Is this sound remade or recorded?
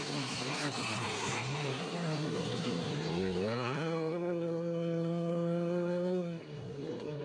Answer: remade